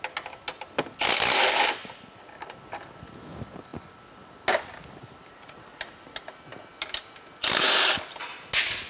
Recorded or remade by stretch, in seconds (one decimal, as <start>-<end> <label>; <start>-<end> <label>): 0.0-8.9 recorded